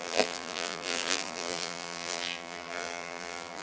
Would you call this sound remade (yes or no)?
yes